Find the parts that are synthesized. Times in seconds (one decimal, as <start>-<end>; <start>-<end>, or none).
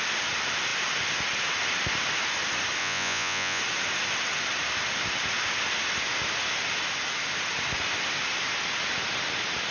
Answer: 2.8-3.6